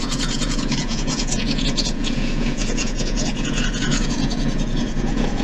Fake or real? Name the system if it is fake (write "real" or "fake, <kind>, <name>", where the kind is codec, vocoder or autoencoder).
fake, vocoder, Vocos